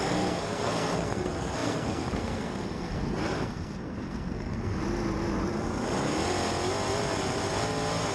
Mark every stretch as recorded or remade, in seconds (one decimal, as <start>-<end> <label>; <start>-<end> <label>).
0.0-4.8 remade; 4.8-8.1 recorded